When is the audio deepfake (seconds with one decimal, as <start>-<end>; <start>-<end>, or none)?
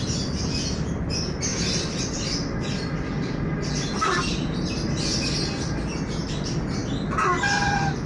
1.5-4.2; 6.8-8.1